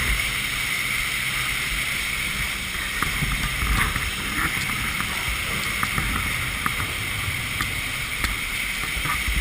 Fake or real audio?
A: fake